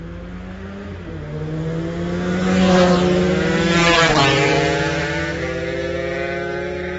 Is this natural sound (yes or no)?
yes